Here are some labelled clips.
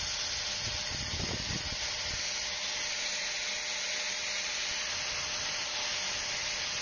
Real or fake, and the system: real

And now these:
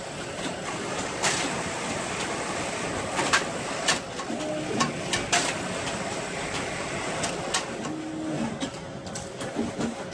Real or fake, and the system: real